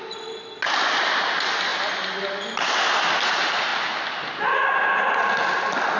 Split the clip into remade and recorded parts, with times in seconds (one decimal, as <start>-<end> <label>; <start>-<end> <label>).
0.0-6.0 recorded